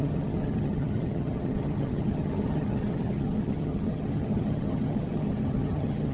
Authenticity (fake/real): fake